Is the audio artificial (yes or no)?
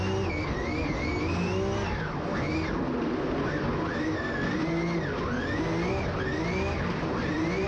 no